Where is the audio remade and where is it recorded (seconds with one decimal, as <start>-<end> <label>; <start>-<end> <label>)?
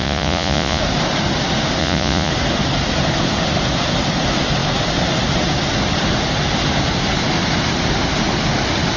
0.0-0.8 remade; 0.8-1.8 recorded; 1.8-2.3 remade; 2.3-9.0 recorded